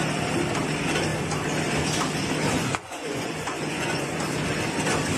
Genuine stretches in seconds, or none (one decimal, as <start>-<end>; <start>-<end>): 0.0-2.5; 4.2-5.2